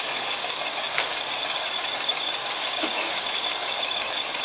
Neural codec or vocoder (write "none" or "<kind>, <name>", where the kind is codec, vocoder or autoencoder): codec, DAC